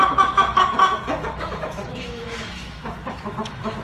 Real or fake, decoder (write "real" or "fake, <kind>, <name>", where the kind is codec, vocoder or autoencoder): fake, autoencoder, DAC-VAE